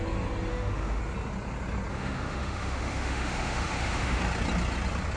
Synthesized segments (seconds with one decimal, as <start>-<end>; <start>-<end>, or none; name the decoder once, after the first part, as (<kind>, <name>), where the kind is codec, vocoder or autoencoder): 0.5-1.0 (autoencoder, DAC-VAE); 1.9-4.2